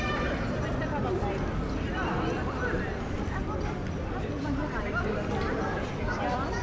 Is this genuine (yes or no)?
no